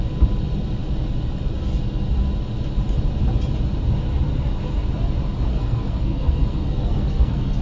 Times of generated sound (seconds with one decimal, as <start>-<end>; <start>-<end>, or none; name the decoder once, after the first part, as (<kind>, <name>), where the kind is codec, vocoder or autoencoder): 5.5-7.6 (codec, SNAC)